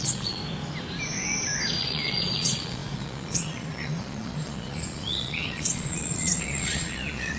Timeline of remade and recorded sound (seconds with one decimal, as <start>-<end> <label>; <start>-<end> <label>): 0.0-0.4 remade; 0.4-1.8 recorded; 1.8-7.4 remade